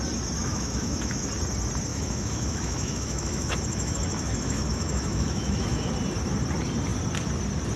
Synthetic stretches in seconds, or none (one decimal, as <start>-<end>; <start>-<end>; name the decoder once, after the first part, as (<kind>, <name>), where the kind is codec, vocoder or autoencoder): 0.4-1.3 (autoencoder, DAC-VAE); 1.9-5.9